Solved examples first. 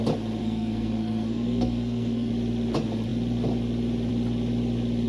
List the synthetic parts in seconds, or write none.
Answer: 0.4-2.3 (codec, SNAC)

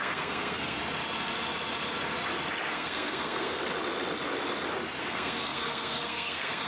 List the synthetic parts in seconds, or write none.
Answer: 0.0-0.8 (codec, SNAC); 2.7-3.6; 5.0-6.7